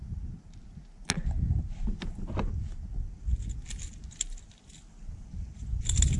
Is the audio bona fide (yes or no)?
yes